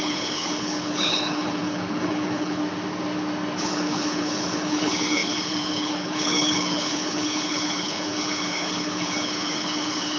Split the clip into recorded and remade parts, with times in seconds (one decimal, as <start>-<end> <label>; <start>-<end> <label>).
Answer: 0.0-2.6 remade; 2.6-3.6 recorded; 3.6-10.2 remade